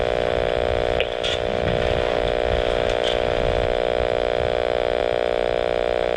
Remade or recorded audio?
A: recorded